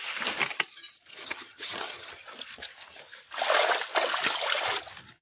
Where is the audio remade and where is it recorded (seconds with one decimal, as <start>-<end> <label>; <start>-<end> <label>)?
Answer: 0.0-1.1 recorded; 1.1-2.1 remade; 2.1-5.2 recorded